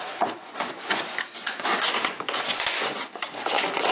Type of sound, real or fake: fake